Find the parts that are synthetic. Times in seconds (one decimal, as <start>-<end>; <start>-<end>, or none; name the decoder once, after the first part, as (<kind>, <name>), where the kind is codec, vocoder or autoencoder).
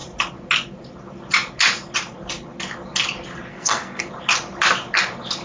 3.5-4.1 (codec, SNAC)